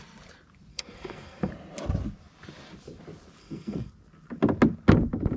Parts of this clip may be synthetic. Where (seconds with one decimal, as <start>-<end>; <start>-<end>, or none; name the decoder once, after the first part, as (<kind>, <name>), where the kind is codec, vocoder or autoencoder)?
0.7-1.5 (codec, SNAC); 3.4-3.9